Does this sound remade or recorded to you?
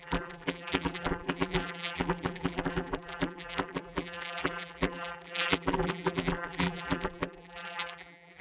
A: remade